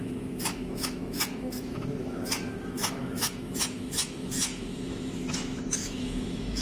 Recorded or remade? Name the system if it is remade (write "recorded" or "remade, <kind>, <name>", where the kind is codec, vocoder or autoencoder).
remade, autoencoder, DAC-VAE